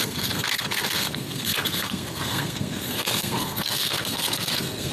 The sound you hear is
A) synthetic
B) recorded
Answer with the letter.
A